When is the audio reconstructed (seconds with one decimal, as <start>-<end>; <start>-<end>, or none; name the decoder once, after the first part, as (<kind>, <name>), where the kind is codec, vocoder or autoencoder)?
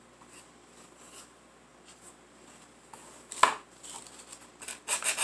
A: none